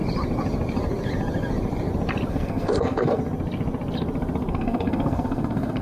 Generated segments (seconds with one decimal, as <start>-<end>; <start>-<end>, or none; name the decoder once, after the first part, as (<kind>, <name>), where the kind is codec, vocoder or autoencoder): 2.3-3.2 (codec, SNAC); 4.5-5.8